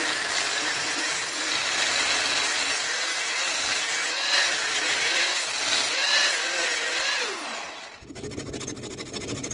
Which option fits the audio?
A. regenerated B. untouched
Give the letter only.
B